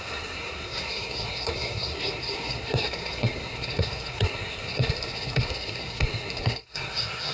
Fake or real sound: fake